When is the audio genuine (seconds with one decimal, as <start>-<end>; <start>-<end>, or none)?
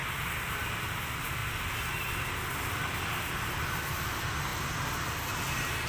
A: 0.0-5.9